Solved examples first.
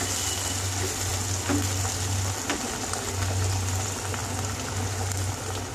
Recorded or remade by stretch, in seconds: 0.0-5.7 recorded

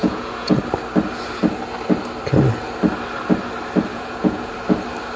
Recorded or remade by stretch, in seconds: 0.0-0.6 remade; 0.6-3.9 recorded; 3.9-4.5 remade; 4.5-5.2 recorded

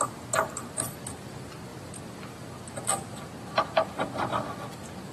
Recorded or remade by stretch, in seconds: 0.0-5.1 recorded

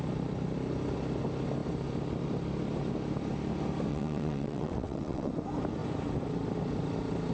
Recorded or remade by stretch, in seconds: 0.0-3.9 recorded; 3.9-5.3 remade; 5.3-7.3 recorded